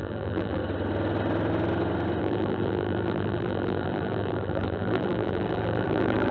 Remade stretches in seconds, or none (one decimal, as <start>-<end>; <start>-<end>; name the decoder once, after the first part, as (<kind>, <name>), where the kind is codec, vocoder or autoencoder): 0.0-0.6 (vocoder, BigVGAN v2); 2.2-6.3